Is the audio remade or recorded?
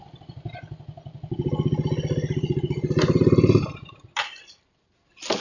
recorded